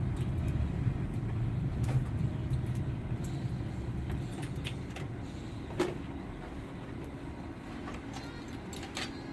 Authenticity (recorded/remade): remade